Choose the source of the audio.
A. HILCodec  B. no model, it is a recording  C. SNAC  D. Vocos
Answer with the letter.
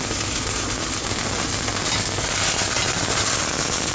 B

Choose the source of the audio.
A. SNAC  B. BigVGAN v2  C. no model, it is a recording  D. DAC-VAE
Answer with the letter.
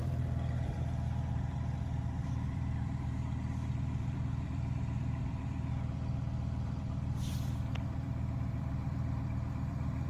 B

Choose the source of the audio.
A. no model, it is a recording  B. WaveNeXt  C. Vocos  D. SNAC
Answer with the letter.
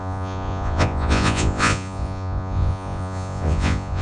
C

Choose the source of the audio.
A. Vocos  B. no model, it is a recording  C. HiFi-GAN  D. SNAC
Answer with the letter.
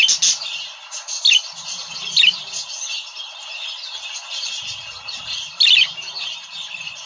B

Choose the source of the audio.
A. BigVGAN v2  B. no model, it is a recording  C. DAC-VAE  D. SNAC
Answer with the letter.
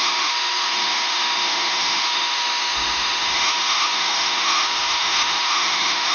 C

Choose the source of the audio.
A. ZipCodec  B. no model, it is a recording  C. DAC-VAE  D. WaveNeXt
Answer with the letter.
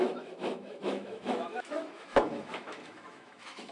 C